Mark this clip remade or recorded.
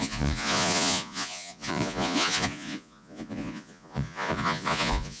remade